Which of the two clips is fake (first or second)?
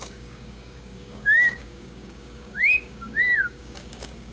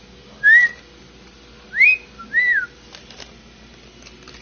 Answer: first